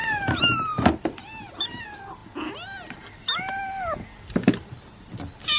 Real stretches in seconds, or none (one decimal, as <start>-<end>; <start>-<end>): 0.0-5.6